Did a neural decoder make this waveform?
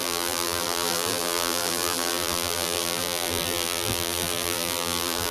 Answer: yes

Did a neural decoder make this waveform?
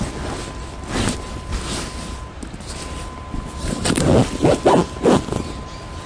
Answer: no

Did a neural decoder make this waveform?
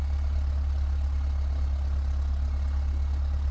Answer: no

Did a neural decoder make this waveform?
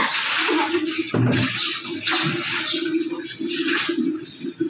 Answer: no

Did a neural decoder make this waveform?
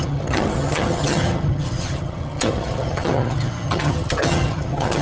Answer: yes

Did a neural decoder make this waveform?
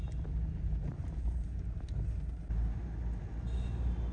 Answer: no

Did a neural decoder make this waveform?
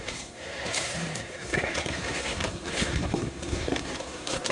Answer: yes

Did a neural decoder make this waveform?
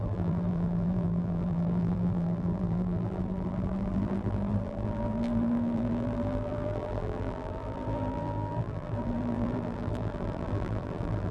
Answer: yes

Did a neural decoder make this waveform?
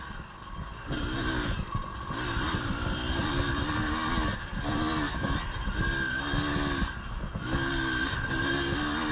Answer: no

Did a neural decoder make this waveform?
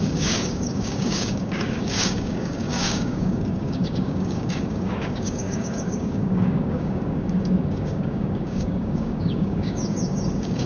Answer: yes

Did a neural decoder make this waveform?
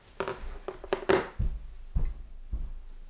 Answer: no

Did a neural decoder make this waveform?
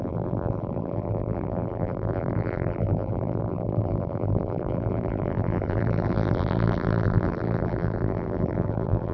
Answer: yes